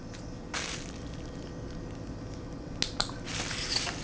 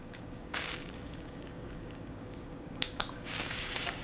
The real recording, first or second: first